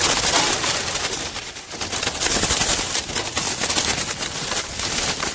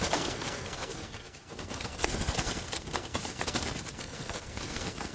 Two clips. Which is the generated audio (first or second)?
second